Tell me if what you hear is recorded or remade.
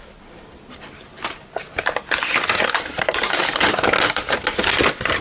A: remade